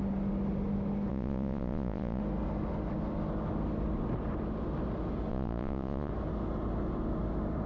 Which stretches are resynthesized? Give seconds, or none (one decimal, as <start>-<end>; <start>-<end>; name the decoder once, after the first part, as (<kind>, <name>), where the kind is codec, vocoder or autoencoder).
1.1-2.2 (vocoder, Vocos); 5.3-6.1